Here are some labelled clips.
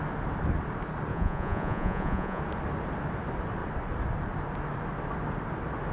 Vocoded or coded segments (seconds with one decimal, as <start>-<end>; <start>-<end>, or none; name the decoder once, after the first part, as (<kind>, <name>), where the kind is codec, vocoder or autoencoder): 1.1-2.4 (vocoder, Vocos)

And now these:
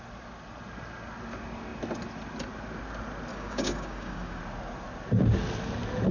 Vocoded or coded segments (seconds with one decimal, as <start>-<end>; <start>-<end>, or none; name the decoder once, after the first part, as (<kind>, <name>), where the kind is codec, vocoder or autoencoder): 3.3-4.4 (codec, DAC)

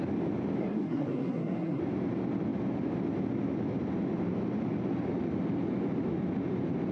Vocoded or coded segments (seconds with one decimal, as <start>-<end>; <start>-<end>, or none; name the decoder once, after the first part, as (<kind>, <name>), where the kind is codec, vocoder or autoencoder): 0.6-1.8 (codec, SNAC)

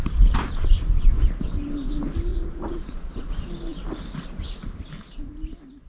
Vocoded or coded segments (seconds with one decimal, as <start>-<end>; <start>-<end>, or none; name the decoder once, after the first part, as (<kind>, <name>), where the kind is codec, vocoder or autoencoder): 2.3-3.3 (vocoder, Vocos)